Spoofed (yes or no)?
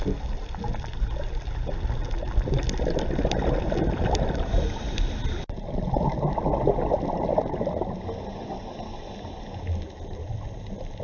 no